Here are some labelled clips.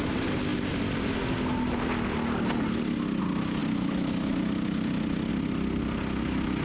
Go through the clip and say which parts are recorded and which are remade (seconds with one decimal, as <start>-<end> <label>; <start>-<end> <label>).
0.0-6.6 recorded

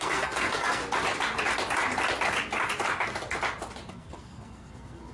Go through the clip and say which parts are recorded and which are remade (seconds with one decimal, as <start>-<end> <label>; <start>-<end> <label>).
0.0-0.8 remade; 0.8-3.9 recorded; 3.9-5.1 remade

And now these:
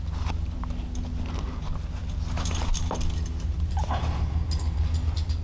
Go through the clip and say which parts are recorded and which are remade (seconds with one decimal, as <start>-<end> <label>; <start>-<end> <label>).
0.0-5.4 recorded